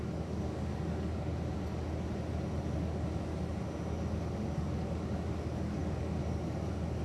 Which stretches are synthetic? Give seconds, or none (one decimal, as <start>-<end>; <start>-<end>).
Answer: 0.0-1.3; 2.8-3.3; 4.1-7.0